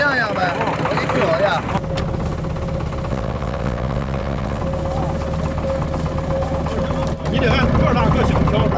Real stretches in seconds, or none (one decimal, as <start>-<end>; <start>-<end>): 0.0-3.1; 4.6-8.8